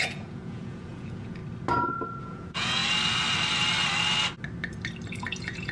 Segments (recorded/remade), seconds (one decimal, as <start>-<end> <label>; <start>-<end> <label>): 0.0-1.4 remade; 1.4-2.2 recorded; 2.2-2.8 remade; 2.8-5.1 recorded; 5.1-5.7 remade